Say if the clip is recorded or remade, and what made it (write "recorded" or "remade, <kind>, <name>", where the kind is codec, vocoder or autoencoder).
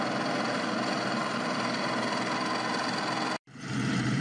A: recorded